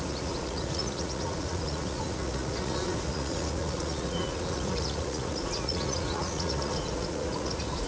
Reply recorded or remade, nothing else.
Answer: remade